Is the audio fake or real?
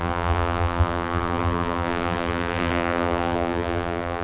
fake